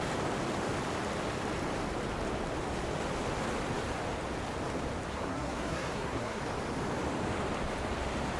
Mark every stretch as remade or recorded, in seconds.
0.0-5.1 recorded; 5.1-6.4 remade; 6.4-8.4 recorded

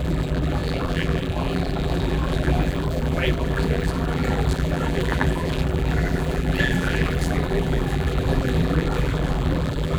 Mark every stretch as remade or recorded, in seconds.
0.0-10.0 remade